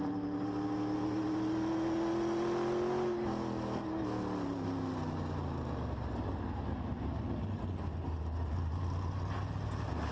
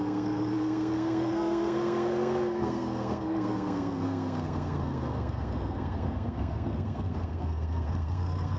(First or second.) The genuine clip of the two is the first